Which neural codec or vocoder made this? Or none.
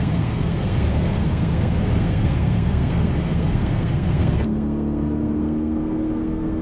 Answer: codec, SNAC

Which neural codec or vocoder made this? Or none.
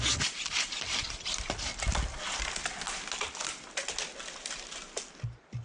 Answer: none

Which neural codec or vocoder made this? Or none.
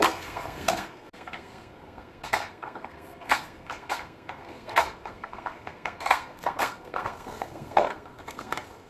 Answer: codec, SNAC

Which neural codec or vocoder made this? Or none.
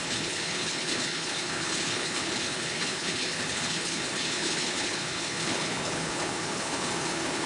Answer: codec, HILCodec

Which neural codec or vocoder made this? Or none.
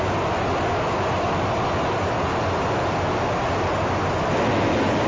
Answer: none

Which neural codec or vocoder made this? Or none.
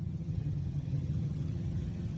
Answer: vocoder, HiFi-GAN